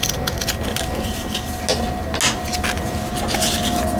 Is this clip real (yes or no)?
yes